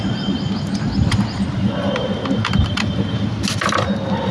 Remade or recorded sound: recorded